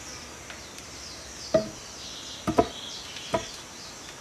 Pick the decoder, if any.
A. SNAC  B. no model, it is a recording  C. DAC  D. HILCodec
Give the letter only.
B